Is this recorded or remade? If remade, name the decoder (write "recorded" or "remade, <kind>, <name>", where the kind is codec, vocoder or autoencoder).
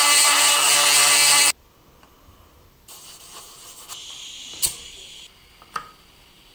recorded